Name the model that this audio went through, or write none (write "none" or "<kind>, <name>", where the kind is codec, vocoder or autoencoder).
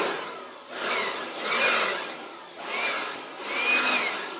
none